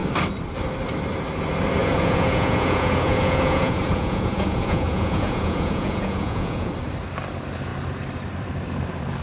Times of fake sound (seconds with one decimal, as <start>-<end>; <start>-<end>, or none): 1.8-6.7